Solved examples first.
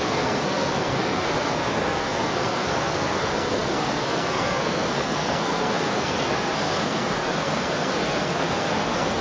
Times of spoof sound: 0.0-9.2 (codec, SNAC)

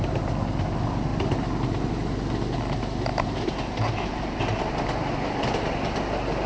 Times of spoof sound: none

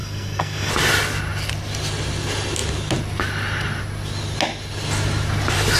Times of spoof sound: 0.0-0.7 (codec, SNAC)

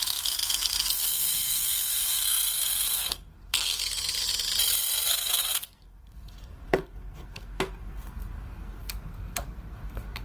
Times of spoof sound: 0.0-3.8 (codec, SNAC); 5.1-10.2

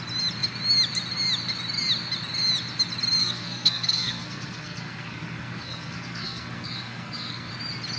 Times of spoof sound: 3.2-7.5 (codec, SNAC)

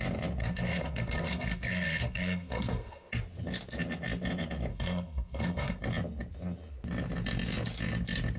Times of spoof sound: 0.4-3.1 (codec, SNAC); 4.7-5.8

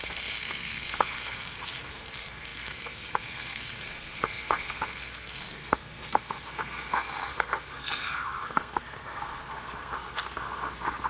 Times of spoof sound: 0.0-11.1 (codec, SNAC)